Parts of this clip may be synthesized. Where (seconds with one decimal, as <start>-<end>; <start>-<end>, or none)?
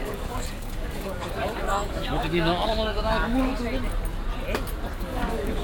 0.0-3.5; 5.0-5.6